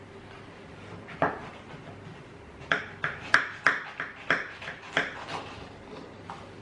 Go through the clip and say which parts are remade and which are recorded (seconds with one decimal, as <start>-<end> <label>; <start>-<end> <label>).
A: 0.0-6.6 recorded